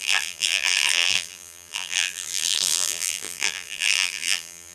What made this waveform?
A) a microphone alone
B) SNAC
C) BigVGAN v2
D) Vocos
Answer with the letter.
C